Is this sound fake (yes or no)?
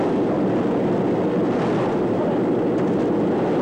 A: no